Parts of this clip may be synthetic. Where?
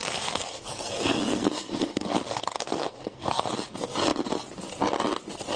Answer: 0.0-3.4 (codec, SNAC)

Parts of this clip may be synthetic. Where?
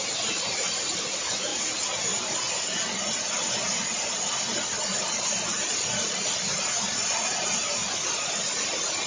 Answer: 4.9-7.7 (vocoder, BigVGAN v2)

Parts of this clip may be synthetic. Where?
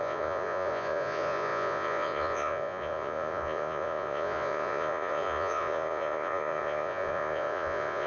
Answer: 0.0-8.1 (vocoder, Vocos)